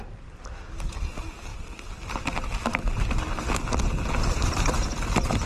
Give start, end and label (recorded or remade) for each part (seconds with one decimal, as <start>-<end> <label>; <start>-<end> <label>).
0.0-5.5 recorded